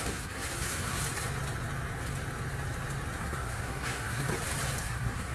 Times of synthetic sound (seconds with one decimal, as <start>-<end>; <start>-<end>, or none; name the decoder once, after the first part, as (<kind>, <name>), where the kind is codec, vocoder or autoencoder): 0.0-1.0 (codec, SNAC); 3.2-4.3; 4.8-5.3